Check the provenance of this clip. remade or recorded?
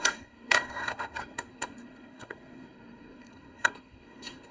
remade